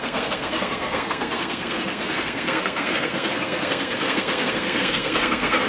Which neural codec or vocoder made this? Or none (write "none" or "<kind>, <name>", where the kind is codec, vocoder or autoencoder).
codec, SNAC